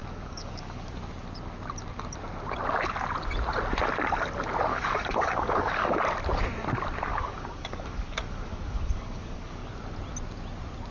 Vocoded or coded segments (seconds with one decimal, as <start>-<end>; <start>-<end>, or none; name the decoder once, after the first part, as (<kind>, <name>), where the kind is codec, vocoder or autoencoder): 0.0-0.9 (codec, DAC); 4.7-6.0; 7.1-9.7

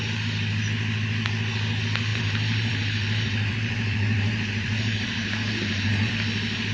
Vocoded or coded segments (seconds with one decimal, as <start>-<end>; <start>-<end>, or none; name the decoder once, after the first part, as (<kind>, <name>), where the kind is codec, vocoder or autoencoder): 2.1-6.1 (vocoder, BigVGAN v2)

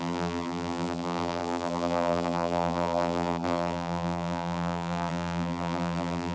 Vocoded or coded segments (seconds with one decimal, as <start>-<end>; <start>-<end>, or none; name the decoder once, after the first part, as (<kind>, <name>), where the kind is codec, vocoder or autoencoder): 0.0-6.3 (vocoder, BigVGAN v2)

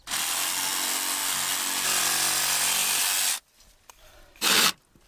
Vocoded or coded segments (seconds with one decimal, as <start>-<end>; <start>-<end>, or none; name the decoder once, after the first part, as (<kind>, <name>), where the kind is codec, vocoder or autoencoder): none

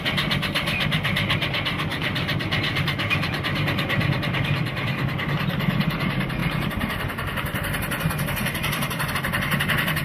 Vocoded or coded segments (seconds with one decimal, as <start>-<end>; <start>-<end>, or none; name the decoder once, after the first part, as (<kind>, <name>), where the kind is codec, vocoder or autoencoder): 1.9-3.4 (vocoder, BigVGAN v2)

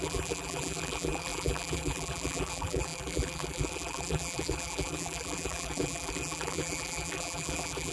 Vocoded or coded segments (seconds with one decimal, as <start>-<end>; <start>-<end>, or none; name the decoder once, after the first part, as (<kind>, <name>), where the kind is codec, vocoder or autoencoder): 0.0-7.9 (vocoder, BigVGAN v2)

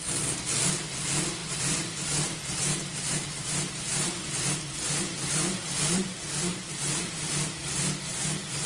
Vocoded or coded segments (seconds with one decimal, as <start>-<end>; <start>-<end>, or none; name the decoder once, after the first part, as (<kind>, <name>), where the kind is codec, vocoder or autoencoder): 1.4-3.5 (vocoder, BigVGAN v2); 3.9-6.1; 6.5-8.7

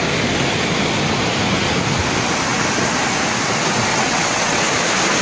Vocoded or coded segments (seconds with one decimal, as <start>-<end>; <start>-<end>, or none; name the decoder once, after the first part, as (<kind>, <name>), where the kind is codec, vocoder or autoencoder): 3.9-4.6 (vocoder, WaveNeXt)